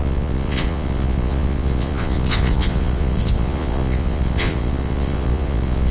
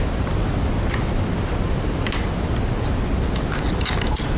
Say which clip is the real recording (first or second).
second